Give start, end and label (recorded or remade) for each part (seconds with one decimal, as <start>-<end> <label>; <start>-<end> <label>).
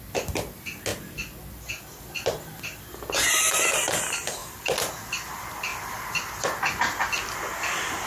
0.0-4.4 recorded; 4.4-4.9 remade; 4.9-5.7 recorded; 5.7-6.8 remade; 6.8-8.1 recorded